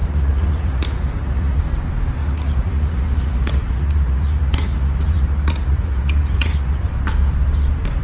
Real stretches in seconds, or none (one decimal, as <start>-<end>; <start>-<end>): 1.6-2.2; 6.9-8.0